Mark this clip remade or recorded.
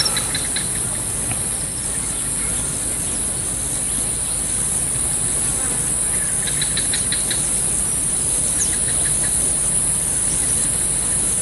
recorded